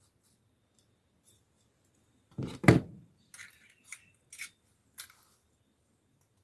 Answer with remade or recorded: recorded